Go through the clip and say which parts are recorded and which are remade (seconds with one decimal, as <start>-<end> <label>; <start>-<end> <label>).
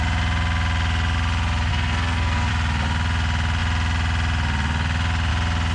0.0-1.7 recorded; 1.7-2.5 remade; 2.5-5.7 recorded